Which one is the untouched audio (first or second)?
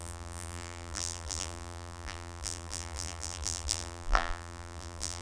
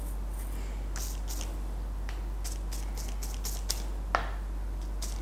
second